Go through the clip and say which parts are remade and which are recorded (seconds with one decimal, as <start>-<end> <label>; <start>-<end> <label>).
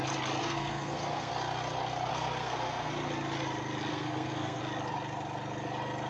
0.0-0.4 recorded; 0.4-1.3 remade; 1.3-2.1 recorded; 2.1-2.9 remade; 2.9-3.9 recorded; 3.9-4.6 remade; 4.6-6.1 recorded